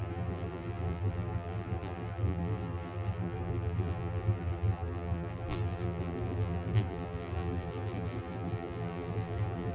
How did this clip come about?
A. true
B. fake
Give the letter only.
B